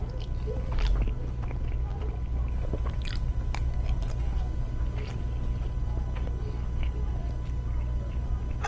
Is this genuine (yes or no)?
yes